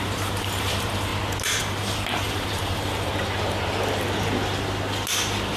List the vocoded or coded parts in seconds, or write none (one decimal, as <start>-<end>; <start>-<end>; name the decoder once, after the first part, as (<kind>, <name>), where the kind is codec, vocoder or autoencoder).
0.0-1.1 (vocoder, BigVGAN v2); 1.6-3.1